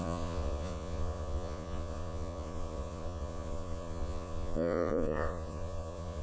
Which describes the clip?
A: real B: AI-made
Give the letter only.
B